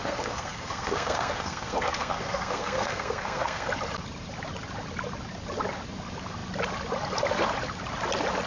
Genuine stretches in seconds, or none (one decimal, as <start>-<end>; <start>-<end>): 3.7-8.5